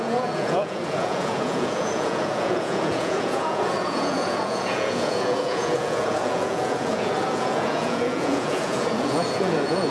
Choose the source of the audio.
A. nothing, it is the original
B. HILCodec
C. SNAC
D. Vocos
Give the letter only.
D